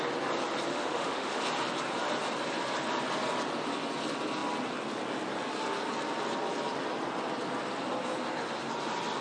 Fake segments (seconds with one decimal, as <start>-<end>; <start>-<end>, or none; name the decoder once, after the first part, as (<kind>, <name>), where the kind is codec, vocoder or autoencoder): 0.7-1.4 (autoencoder, DAC-VAE)